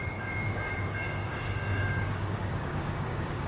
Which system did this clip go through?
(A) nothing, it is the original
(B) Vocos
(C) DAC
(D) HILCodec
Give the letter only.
C